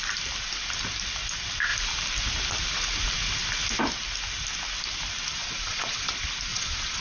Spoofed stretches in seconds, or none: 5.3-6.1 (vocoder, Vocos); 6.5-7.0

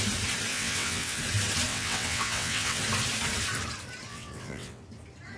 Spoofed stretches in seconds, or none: 0.5-1.2 (vocoder, WaveNeXt); 1.7-2.8; 4.1-4.8

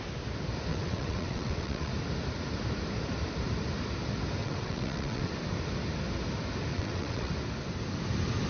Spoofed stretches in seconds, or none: 0.7-1.9 (vocoder, WaveNeXt); 4.4-5.3; 6.7-7.3

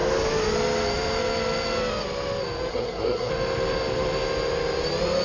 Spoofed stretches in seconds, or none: 2.7-3.3 (codec, SNAC)

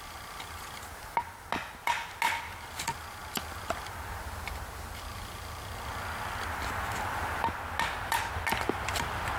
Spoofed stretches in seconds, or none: none